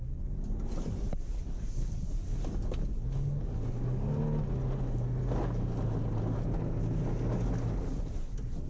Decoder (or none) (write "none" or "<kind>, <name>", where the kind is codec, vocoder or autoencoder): none